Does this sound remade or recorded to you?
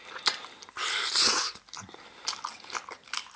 recorded